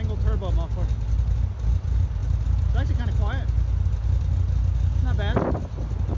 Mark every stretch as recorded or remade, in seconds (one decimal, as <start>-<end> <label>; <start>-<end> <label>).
0.0-6.2 recorded